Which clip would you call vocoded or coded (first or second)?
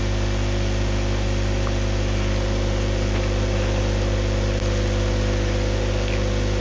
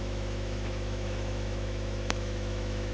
second